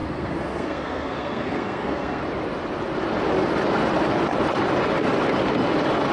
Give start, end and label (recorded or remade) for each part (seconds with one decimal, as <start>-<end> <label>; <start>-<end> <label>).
0.0-2.2 remade; 2.2-6.1 recorded